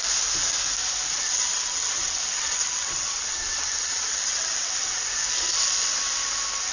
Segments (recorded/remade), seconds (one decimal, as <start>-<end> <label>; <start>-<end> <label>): 0.0-1.1 recorded; 1.1-5.1 remade; 5.1-6.7 recorded